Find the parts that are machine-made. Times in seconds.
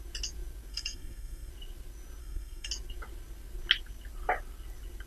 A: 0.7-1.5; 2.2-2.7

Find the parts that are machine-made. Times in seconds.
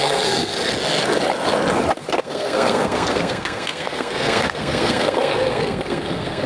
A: 0.0-0.5; 2.0-6.5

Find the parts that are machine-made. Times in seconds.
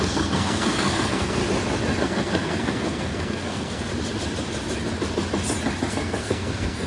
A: 0.0-1.4; 2.0-3.9; 5.9-6.9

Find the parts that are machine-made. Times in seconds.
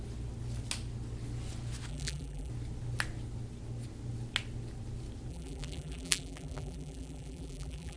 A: 1.9-2.5; 5.3-8.0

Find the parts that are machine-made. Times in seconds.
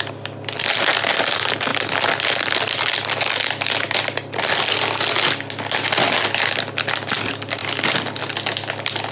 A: none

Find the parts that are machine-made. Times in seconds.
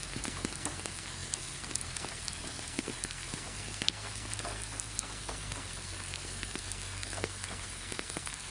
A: 0.0-8.5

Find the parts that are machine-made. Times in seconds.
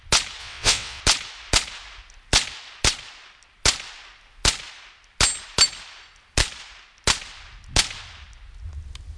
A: 0.4-1.0